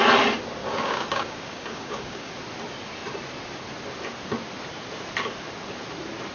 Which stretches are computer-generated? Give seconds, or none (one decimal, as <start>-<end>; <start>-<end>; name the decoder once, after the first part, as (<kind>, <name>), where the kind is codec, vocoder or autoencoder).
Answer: 0.6-2.3 (codec, DAC)